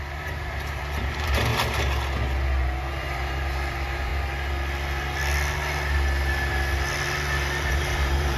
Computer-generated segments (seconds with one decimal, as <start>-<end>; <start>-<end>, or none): 0.0-1.5; 2.9-4.1; 7.7-8.4